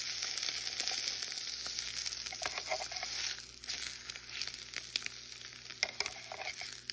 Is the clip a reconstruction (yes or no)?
no